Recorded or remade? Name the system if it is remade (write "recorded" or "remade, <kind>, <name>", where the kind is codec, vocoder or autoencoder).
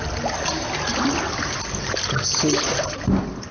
recorded